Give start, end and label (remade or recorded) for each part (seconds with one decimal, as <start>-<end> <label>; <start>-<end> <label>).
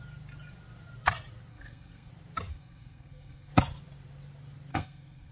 0.0-1.5 recorded; 1.5-2.1 remade; 2.1-2.5 recorded; 2.5-3.5 remade; 3.5-4.7 recorded; 4.7-5.3 remade